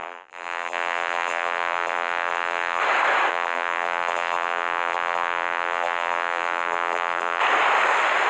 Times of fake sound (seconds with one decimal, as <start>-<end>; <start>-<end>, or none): 0.0-2.8; 3.3-7.4